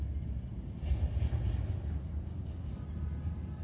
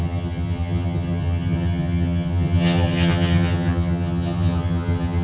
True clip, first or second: first